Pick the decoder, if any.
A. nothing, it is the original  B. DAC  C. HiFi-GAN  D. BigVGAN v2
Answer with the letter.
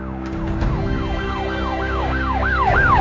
B